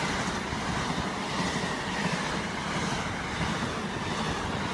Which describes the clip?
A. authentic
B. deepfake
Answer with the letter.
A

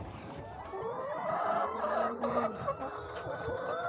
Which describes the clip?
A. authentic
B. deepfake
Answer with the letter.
B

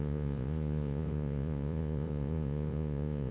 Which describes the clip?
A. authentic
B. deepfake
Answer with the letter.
B